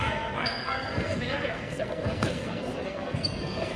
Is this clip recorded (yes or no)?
no